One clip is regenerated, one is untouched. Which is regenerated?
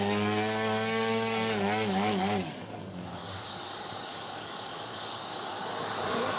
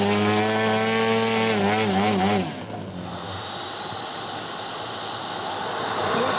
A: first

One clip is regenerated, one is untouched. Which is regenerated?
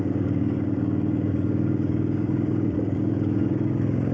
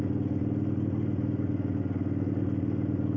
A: first